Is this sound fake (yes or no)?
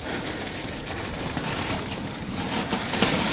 yes